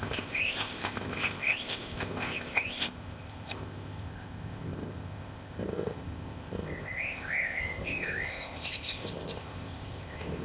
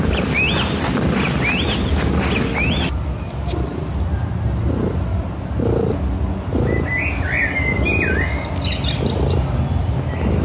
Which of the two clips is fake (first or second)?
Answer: first